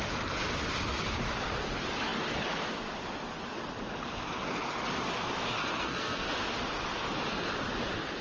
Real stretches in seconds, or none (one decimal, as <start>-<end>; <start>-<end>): 0.0-5.7; 6.3-8.2